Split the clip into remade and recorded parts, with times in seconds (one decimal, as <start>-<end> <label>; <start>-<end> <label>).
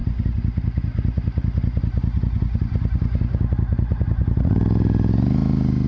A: 0.0-5.9 recorded